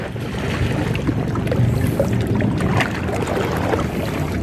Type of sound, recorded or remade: recorded